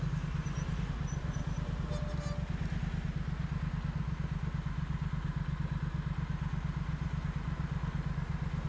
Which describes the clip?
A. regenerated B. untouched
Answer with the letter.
B